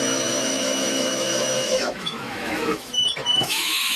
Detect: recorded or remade remade